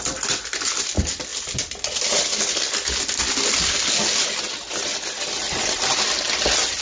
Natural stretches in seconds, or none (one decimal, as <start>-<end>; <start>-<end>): 0.0-6.8